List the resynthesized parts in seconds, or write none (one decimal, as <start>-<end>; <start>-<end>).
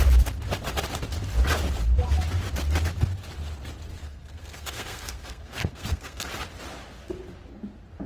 4.0-6.3